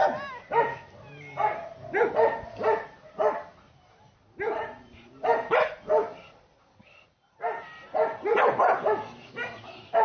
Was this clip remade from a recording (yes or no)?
no